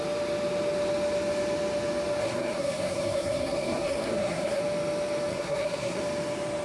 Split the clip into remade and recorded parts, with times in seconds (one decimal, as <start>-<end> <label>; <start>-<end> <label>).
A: 0.0-2.2 recorded; 2.2-4.6 remade; 4.6-5.3 recorded; 5.3-6.0 remade; 6.0-6.6 recorded